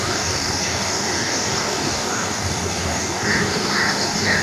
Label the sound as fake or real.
fake